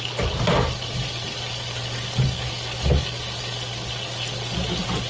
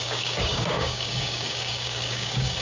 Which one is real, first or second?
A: first